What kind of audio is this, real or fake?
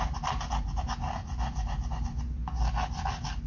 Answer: real